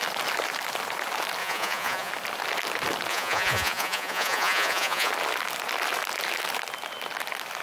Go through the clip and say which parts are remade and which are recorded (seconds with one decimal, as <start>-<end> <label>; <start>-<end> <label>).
0.0-1.4 recorded; 1.4-2.1 remade; 2.1-3.1 recorded; 3.1-5.1 remade; 5.1-7.6 recorded